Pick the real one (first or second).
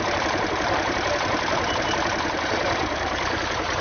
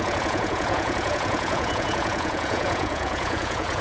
first